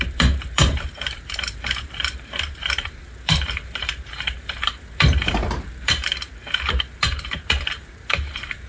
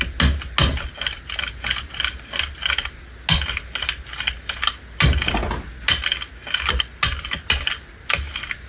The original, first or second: second